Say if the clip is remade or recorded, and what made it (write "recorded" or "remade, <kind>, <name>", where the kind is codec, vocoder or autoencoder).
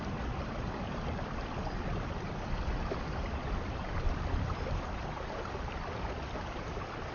remade, vocoder, BigVGAN v2